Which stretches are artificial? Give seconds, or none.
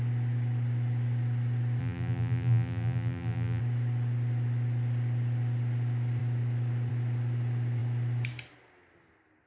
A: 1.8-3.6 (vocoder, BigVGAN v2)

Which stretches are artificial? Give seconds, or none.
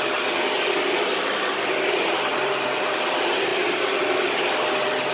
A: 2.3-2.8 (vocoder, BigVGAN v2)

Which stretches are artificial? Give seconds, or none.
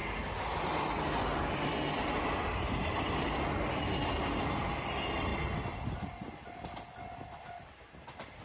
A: 0.0-5.3 (vocoder, BigVGAN v2)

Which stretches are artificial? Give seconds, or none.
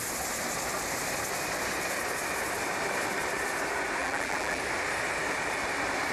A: 4.0-4.6 (vocoder, BigVGAN v2)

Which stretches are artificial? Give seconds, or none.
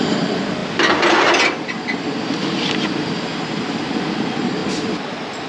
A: none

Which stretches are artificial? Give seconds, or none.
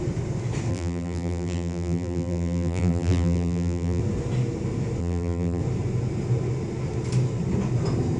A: 0.7-4.0 (vocoder, BigVGAN v2); 5.0-5.6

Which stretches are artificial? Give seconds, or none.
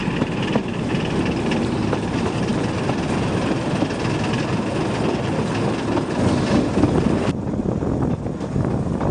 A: none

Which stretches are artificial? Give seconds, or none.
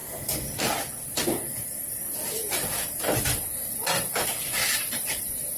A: 2.0-5.6 (vocoder, BigVGAN v2)